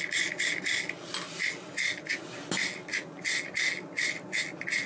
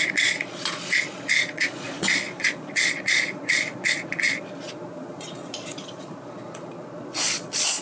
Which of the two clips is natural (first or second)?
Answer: first